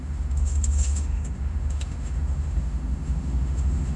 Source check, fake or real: fake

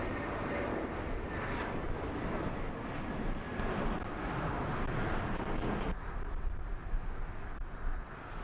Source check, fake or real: real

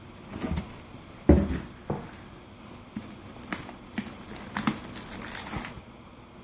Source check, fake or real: real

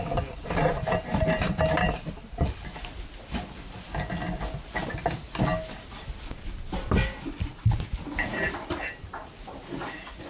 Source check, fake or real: real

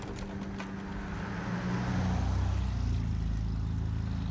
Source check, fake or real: real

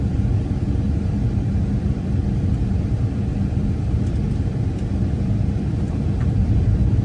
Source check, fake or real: fake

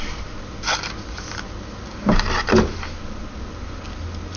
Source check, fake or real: real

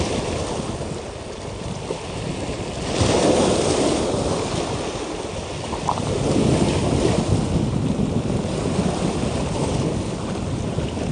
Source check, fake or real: real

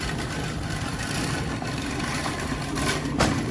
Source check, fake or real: real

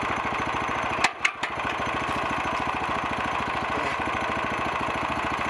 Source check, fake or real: real